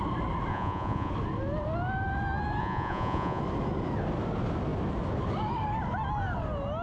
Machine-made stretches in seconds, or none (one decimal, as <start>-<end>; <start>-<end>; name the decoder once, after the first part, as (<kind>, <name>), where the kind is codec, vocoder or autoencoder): 0.5-1.1 (vocoder, Vocos); 2.6-3.4